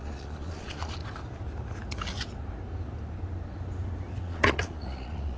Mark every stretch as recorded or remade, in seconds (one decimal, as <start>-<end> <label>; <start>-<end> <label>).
0.0-1.0 remade; 1.0-4.2 recorded; 4.2-5.4 remade